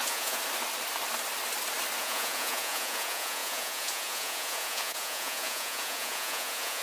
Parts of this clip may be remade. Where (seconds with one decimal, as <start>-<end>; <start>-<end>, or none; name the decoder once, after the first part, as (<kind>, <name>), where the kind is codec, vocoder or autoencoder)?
0.0-0.4 (vocoder, Vocos); 2.0-6.8